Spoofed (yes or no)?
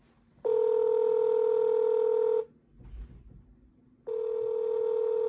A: no